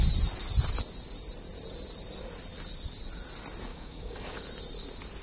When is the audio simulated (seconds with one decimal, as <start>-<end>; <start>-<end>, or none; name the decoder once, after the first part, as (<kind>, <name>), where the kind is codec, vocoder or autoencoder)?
3.7-4.4 (codec, DAC)